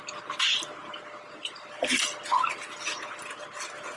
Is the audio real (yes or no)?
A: yes